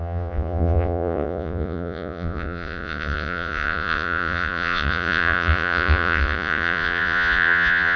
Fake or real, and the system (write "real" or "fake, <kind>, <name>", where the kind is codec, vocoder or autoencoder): fake, vocoder, Vocos